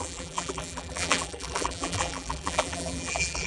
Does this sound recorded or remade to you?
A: remade